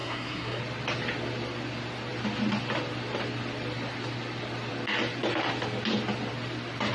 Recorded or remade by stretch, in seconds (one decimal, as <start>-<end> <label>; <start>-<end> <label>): 0.0-0.6 remade; 0.6-6.9 recorded